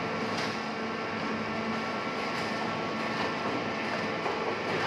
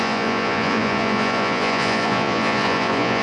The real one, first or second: first